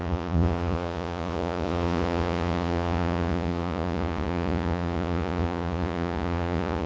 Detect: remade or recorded remade